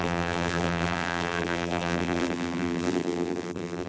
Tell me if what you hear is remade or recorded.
remade